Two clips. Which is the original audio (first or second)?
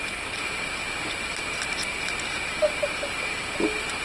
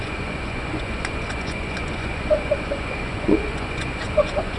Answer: first